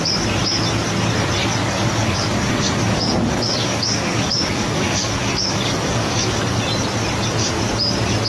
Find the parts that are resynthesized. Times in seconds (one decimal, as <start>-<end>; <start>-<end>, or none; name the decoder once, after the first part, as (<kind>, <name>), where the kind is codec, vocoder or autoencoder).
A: 1.6-6.6 (codec, DAC)